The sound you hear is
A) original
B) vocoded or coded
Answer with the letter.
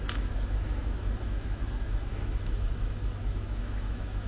B